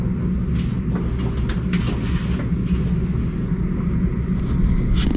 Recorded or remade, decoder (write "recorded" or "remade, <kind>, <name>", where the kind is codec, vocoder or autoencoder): recorded